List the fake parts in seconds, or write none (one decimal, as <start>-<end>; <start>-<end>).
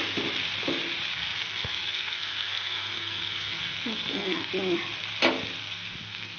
1.1-4.5; 5.6-6.4